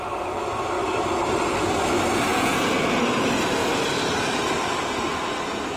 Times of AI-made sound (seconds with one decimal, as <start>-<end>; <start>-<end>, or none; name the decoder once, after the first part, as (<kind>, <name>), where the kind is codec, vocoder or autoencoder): 2.3-3.0 (vocoder, Vocos)